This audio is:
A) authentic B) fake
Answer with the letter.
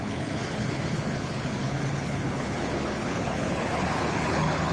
B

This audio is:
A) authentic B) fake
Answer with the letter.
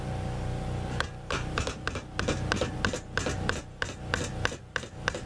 A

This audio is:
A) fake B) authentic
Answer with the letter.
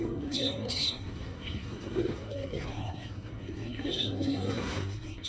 A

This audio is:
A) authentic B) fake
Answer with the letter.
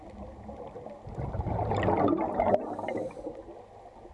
A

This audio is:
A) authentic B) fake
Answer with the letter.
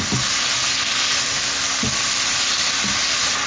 A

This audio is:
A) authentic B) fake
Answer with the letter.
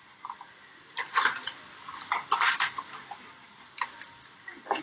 A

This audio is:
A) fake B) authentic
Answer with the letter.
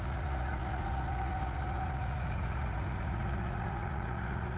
A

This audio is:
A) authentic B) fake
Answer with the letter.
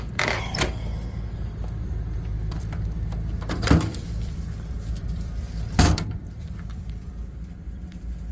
B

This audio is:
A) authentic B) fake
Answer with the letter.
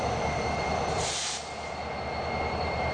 B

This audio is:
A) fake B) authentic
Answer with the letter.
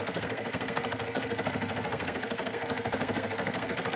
A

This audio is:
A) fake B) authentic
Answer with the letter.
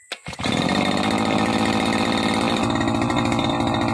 B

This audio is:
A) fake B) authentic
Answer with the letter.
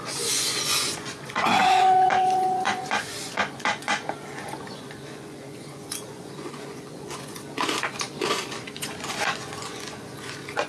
A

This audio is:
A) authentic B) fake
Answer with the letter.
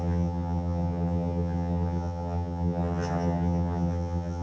B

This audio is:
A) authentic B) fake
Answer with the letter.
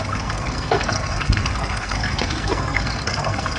B